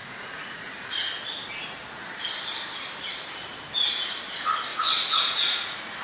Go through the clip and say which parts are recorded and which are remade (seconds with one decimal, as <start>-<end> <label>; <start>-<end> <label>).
0.0-0.7 remade; 0.7-4.7 recorded; 4.7-6.0 remade